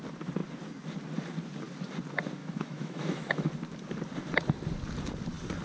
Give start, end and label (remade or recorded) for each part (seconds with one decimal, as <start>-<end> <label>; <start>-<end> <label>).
0.0-2.4 recorded; 2.4-3.5 remade; 3.5-5.6 recorded